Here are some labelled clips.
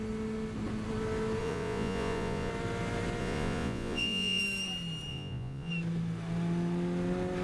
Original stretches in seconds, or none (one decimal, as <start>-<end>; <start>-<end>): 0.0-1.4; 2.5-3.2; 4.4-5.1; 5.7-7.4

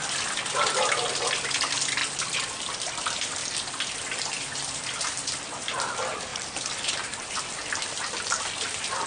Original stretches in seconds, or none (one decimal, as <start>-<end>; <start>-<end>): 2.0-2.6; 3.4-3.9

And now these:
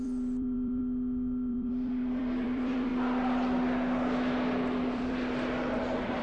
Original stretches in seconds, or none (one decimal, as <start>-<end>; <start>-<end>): 0.8-1.5; 2.9-4.6